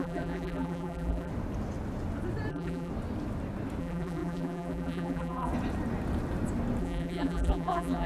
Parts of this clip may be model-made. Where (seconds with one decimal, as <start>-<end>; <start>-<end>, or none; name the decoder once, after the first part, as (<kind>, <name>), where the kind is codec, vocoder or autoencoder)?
0.0-1.3 (vocoder, BigVGAN v2); 2.5-2.9; 3.8-5.5; 6.8-8.1